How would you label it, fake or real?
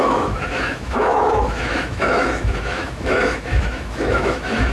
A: fake